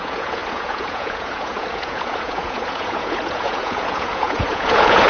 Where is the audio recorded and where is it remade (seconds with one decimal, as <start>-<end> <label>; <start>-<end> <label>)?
0.0-5.1 remade